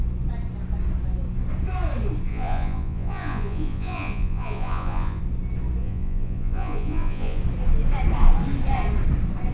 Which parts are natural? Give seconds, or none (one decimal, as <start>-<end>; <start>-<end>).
0.0-2.3; 5.2-5.8; 7.4-9.5